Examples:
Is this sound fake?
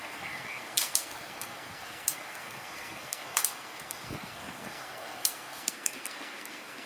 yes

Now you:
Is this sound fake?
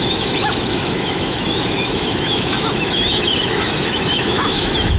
yes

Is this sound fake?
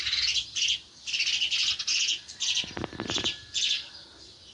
no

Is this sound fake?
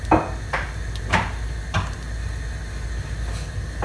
no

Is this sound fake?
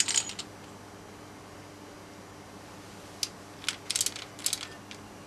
no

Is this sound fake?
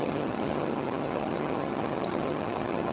yes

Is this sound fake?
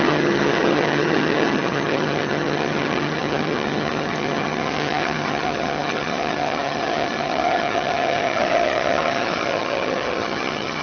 yes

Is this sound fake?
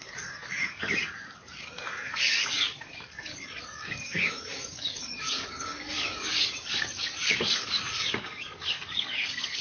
yes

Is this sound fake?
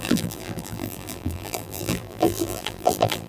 yes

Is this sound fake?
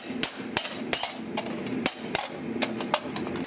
no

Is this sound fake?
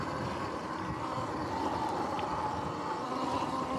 no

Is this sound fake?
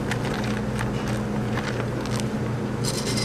no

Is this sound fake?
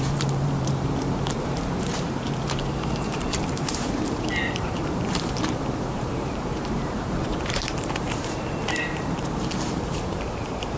yes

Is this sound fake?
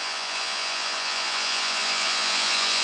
yes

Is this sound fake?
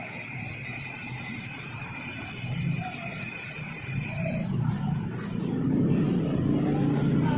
yes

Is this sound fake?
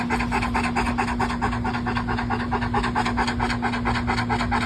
no